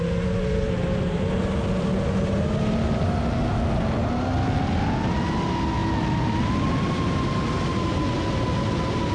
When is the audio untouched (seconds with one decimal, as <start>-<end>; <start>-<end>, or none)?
0.0-9.1